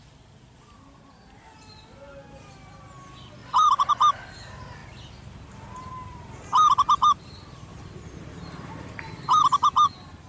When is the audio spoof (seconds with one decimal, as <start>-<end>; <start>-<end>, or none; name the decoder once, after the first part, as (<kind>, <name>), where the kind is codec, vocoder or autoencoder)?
3.4-3.9 (vocoder, BigVGAN v2); 7.7-9.4